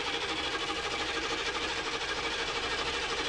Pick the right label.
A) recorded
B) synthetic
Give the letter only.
A